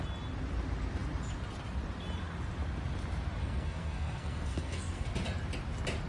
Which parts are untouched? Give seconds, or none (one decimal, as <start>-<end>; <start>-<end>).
0.0-3.4; 5.1-6.1